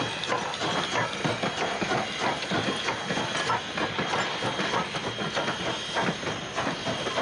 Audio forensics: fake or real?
real